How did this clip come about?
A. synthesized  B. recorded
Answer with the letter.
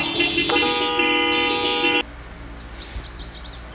B